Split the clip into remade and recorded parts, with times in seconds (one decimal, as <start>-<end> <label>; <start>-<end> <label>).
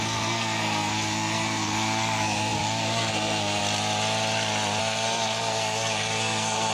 0.0-3.6 remade; 3.6-4.8 recorded; 4.8-6.7 remade